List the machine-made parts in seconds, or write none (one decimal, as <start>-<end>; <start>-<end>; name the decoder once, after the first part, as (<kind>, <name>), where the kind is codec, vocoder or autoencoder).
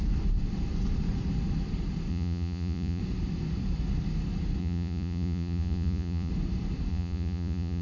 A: 2.1-3.0 (vocoder, Vocos); 4.6-6.3; 6.9-7.8